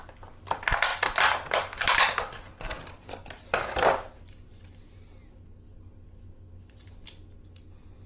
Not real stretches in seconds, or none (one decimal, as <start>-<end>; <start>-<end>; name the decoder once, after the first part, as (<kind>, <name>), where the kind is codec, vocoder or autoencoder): 0.9-4.2 (vocoder, BigVGAN v2)